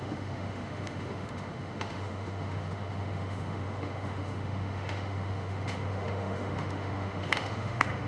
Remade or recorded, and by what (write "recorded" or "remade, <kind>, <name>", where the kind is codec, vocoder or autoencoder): remade, autoencoder, DAC-VAE